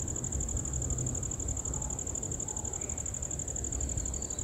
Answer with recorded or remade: recorded